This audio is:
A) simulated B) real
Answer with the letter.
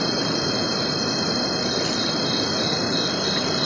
B